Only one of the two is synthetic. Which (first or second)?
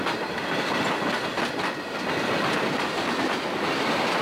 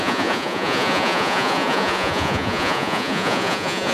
second